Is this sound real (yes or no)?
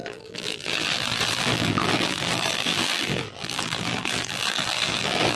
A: no